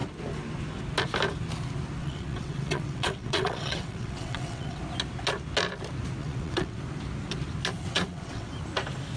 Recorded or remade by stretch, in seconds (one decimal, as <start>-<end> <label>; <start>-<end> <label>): 0.0-2.0 recorded; 2.0-4.8 remade; 4.8-6.2 recorded; 6.2-6.8 remade; 6.8-7.8 recorded; 7.8-8.5 remade; 8.5-9.2 recorded